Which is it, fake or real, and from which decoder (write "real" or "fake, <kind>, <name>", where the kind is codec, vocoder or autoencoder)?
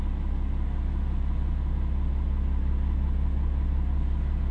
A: real